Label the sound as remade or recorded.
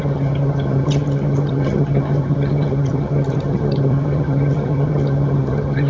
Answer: remade